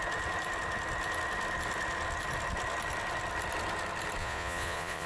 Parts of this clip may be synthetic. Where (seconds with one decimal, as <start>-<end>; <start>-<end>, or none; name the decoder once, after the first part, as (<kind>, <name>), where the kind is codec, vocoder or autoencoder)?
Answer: 4.2-5.1 (vocoder, Vocos)